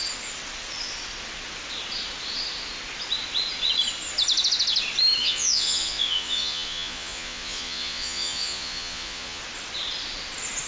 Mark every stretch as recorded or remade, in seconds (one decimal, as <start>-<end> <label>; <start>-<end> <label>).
0.0-5.2 recorded; 5.2-9.4 remade; 9.4-10.7 recorded